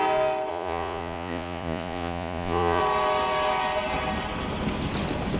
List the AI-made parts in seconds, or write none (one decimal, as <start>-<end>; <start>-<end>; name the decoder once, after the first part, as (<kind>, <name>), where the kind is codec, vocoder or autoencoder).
0.5-2.8 (vocoder, Vocos)